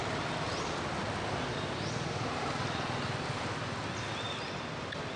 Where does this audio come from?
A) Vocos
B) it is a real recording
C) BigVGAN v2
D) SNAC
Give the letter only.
B